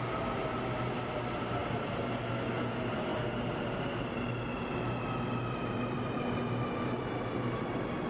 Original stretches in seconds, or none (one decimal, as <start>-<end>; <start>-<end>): 0.0-8.1